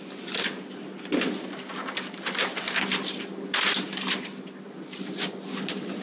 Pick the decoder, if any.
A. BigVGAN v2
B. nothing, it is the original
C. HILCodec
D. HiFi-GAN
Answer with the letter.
B